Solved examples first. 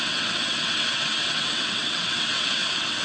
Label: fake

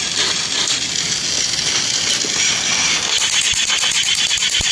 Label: real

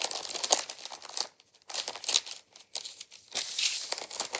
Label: real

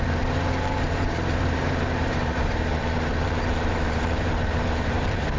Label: fake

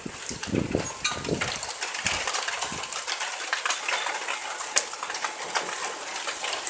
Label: real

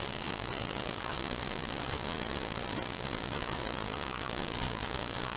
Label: fake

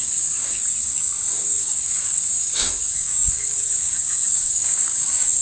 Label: fake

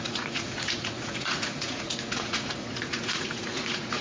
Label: fake